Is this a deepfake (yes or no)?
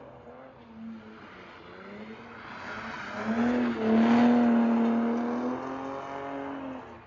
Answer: no